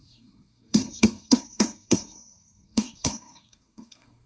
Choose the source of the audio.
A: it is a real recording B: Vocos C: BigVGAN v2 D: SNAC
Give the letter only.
D